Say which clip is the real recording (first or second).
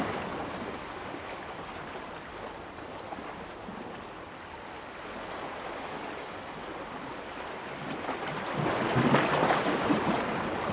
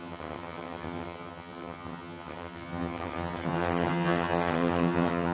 first